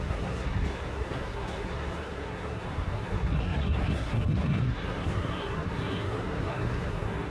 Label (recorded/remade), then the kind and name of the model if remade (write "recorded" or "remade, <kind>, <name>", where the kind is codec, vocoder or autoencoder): remade, codec, SNAC